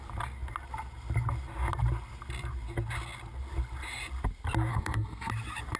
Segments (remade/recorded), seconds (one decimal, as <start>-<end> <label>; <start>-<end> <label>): 0.0-4.7 recorded; 4.7-5.3 remade; 5.3-5.8 recorded